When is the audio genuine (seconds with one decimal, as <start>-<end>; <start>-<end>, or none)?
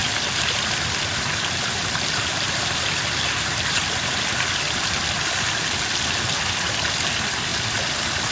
5.0-8.3